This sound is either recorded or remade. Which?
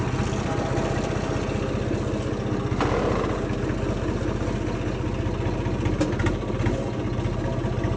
recorded